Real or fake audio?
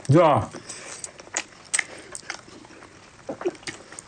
real